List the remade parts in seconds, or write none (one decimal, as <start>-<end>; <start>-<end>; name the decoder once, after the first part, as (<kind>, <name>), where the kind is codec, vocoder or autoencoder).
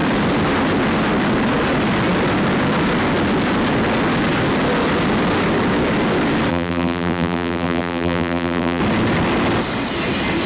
6.5-8.8 (vocoder, BigVGAN v2)